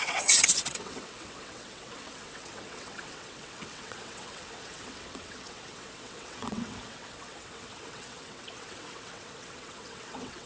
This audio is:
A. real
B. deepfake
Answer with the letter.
B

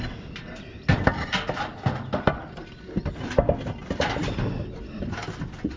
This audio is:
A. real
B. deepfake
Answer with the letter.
A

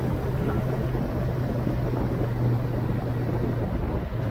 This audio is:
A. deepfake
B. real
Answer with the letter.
B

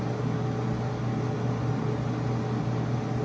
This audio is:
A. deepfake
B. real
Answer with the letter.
B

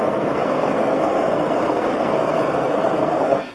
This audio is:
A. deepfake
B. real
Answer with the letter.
A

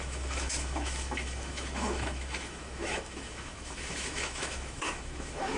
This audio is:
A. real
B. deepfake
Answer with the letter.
B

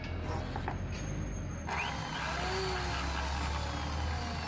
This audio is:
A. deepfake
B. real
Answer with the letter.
B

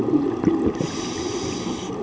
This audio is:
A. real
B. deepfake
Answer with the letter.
A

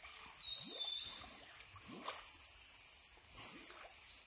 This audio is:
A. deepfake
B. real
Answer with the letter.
B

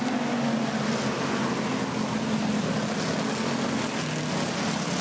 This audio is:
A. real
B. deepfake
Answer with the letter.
A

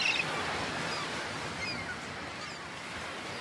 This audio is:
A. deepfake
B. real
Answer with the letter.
B